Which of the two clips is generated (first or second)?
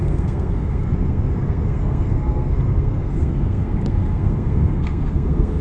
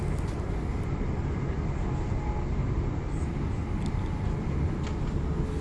first